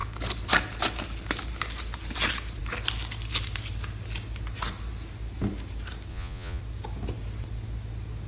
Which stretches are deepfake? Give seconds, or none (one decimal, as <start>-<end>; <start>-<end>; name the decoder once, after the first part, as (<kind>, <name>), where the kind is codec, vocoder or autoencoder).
6.1-6.6 (vocoder, Vocos)